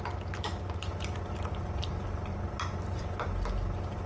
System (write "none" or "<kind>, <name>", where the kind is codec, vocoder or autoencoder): none